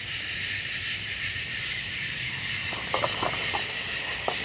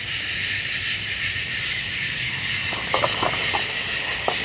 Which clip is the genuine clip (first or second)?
second